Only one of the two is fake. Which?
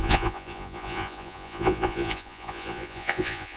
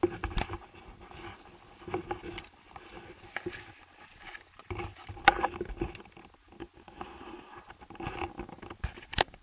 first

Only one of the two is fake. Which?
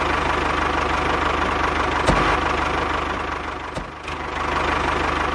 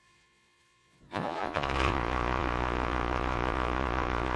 second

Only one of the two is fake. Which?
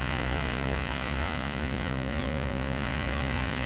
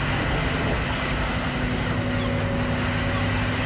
first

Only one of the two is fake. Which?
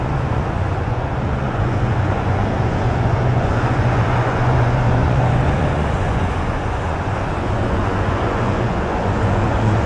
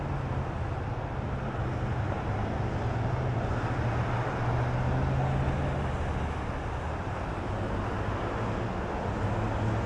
first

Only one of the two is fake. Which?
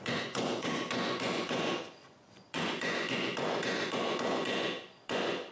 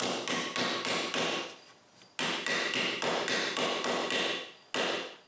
first